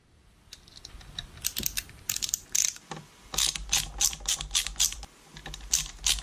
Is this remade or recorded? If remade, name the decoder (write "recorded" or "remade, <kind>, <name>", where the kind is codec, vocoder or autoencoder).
recorded